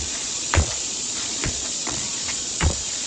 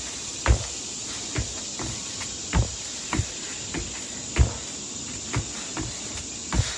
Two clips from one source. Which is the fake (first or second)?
first